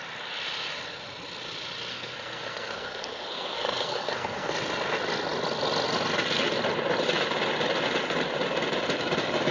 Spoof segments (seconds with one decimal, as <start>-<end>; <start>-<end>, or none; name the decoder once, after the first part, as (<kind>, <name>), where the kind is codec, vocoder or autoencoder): 1.9-4.5 (codec, SNAC)